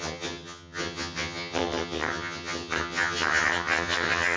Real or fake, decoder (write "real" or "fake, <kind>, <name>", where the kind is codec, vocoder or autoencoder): fake, vocoder, HiFi-GAN